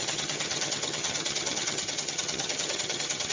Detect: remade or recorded remade